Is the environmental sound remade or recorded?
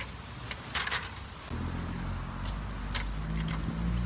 recorded